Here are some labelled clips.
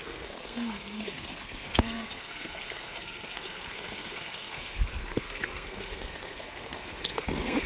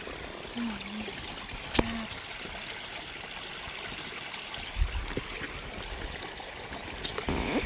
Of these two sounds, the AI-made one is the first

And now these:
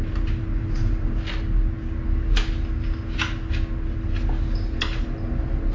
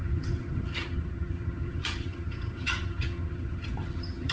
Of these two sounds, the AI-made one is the second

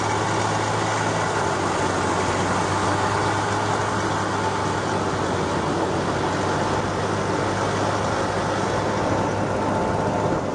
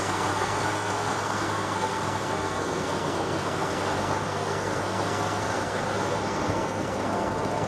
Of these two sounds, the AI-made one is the second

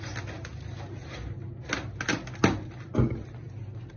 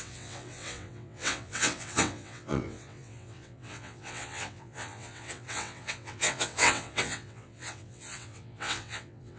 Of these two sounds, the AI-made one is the second